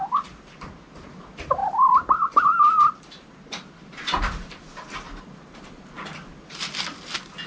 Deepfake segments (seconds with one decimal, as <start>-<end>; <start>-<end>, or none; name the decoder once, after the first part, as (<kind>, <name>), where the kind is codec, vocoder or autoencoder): none